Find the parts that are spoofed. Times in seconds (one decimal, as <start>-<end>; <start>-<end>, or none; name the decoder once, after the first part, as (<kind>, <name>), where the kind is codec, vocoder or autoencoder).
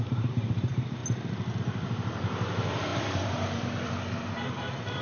0.0-1.0 (vocoder, BigVGAN v2); 1.6-5.0